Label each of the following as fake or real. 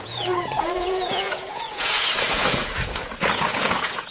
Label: fake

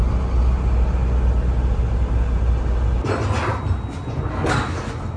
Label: real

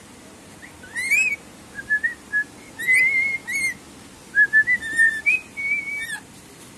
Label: real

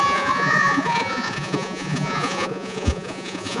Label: fake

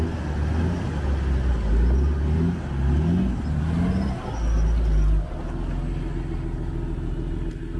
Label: real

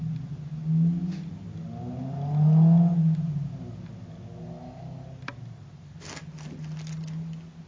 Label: real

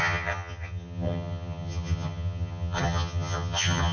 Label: fake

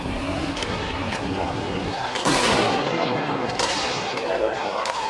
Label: fake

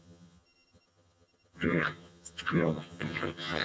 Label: fake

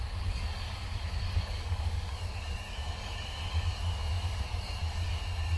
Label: fake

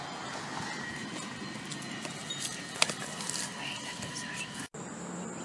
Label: real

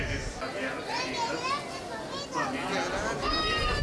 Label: real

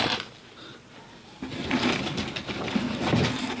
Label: real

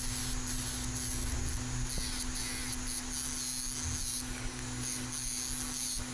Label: real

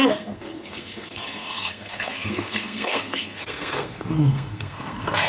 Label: fake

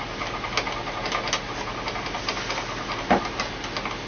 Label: real